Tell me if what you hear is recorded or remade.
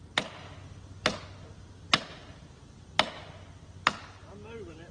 recorded